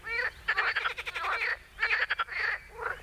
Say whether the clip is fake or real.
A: real